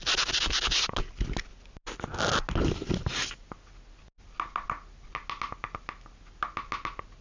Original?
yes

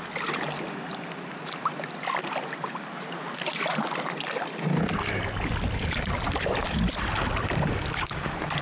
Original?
yes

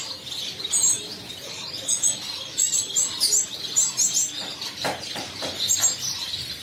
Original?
yes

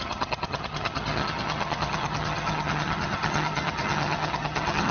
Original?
no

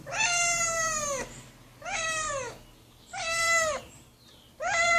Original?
no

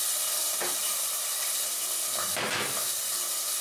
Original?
yes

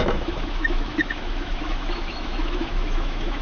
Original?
no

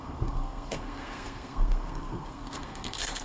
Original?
no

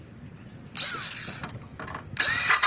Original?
yes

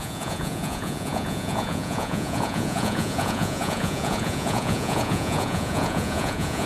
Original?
no